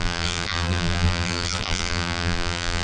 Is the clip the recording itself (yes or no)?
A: no